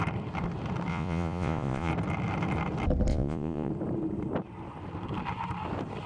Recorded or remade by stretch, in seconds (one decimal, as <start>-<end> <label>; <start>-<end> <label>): 0.0-0.9 recorded; 0.9-1.9 remade; 1.9-3.1 recorded; 3.1-3.7 remade; 3.7-6.1 recorded